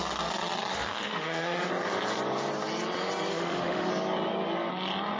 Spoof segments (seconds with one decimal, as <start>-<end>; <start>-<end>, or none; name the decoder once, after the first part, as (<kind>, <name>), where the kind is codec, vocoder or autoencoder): 0.7-1.7 (autoencoder, DAC-VAE); 3.3-3.9